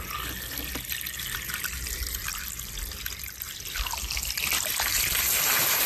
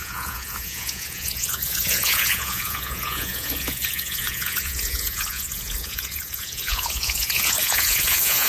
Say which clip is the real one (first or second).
first